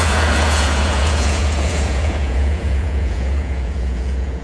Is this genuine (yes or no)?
no